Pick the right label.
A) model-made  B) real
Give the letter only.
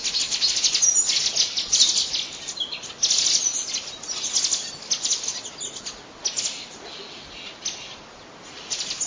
B